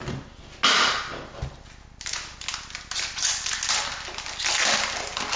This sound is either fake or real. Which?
real